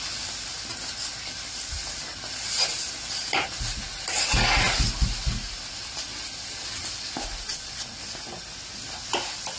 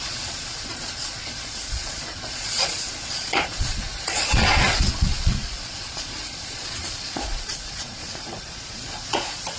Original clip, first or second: first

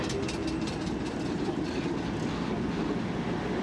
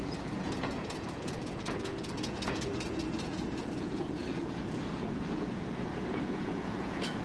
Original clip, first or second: first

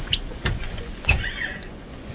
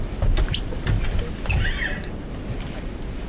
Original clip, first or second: second